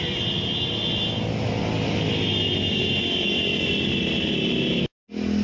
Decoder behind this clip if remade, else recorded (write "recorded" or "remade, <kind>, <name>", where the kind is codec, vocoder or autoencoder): recorded